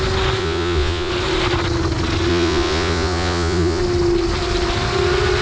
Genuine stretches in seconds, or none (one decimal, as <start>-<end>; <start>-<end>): 0.0-0.4; 1.1-2.3; 3.8-5.4